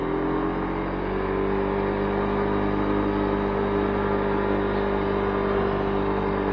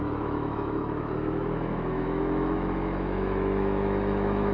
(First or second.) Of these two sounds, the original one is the first